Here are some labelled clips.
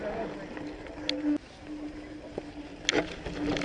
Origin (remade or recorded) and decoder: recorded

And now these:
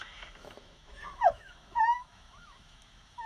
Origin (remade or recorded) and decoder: remade, autoencoder, DAC-VAE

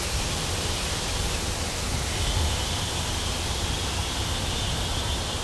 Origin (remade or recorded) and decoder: recorded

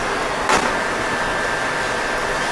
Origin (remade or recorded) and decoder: recorded